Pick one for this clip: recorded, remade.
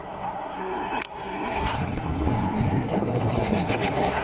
remade